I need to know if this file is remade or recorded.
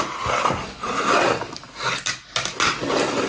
recorded